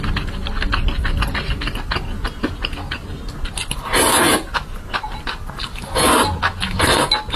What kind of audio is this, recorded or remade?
recorded